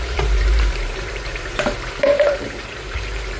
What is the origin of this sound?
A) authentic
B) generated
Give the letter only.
B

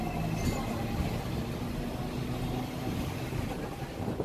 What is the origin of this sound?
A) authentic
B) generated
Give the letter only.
A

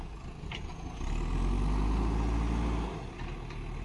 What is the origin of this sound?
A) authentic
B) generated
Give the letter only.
A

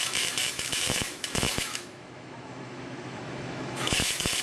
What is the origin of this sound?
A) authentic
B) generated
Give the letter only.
B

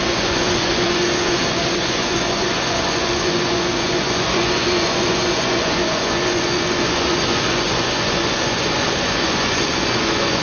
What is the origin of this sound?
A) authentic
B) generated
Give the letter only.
B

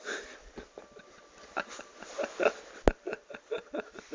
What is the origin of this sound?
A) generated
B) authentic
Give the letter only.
B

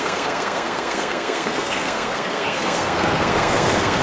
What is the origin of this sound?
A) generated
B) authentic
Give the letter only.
A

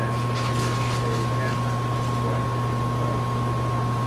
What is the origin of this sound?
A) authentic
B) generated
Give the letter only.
A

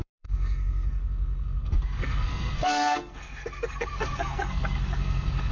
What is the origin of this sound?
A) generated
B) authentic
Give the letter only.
A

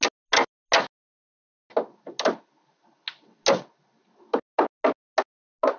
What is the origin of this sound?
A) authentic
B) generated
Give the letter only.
A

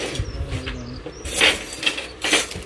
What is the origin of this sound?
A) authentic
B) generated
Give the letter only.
A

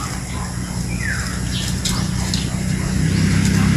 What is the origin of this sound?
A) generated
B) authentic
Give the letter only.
B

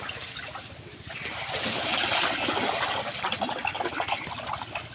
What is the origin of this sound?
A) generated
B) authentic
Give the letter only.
B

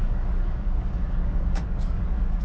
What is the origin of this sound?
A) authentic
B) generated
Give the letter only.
B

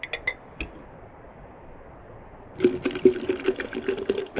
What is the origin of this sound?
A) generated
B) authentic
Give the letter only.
B